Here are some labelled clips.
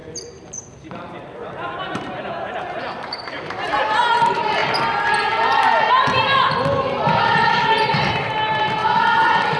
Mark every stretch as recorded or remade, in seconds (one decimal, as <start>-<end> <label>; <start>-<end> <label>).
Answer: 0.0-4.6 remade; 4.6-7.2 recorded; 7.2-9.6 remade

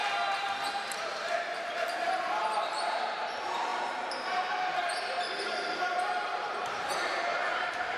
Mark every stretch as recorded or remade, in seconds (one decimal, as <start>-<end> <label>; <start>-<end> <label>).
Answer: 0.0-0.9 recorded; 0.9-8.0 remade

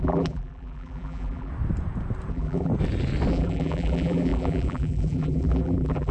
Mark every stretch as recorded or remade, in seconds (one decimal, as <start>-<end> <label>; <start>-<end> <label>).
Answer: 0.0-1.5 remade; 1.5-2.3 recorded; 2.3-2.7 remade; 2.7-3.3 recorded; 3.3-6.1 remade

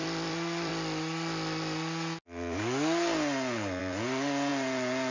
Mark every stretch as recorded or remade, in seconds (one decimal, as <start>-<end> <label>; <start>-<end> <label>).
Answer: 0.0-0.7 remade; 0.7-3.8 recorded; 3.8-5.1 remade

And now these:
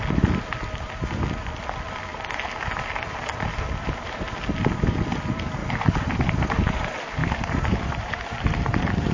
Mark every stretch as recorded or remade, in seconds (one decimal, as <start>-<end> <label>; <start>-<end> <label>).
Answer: 0.0-5.6 recorded; 5.6-6.6 remade; 6.6-7.2 recorded; 7.2-8.1 remade; 8.1-9.1 recorded

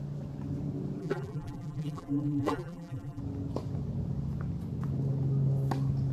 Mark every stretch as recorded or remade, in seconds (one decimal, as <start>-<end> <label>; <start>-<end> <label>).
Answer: 0.0-1.0 recorded; 1.0-3.2 remade; 3.2-6.1 recorded

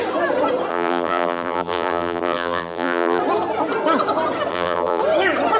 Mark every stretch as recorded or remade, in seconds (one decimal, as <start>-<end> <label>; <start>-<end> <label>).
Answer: 0.0-0.7 recorded; 0.7-3.2 remade; 3.2-4.5 recorded; 4.5-5.0 remade; 5.0-5.6 recorded